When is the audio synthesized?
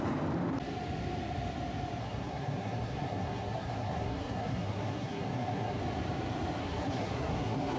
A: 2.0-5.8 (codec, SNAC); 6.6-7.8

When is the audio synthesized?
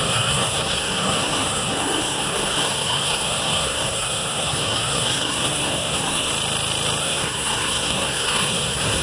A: 0.0-6.3 (codec, SNAC); 7.0-9.0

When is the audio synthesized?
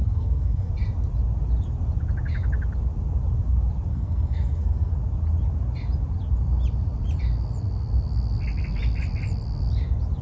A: 0.0-0.7 (codec, SNAC); 3.9-4.9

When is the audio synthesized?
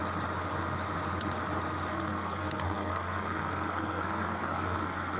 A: 1.9-5.2 (codec, SNAC)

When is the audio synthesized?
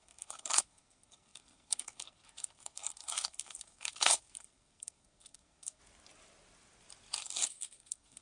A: 0.0-5.8 (codec, SNAC); 7.2-8.2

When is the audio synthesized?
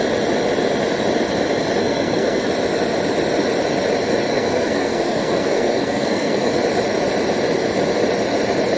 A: 1.8-2.4 (codec, SNAC); 4.3-6.5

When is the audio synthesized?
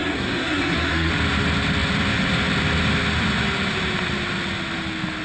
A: 0.0-1.1 (codec, SNAC)